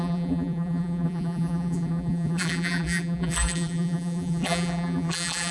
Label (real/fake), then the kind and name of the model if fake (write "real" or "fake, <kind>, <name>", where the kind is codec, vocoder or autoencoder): fake, vocoder, BigVGAN v2